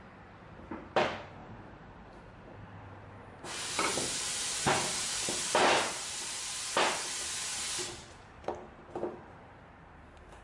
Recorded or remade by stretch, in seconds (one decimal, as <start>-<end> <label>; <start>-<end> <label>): 0.0-10.4 remade